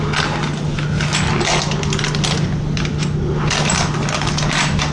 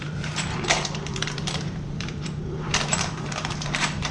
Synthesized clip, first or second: second